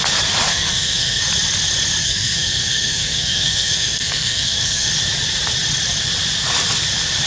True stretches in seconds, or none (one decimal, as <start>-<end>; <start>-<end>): 0.0-0.5; 1.2-2.0; 4.9-7.3